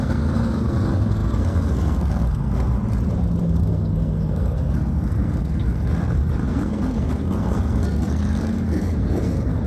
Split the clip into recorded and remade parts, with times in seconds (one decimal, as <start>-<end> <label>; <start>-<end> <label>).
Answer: 0.0-2.8 remade; 2.8-3.4 recorded; 3.4-9.7 remade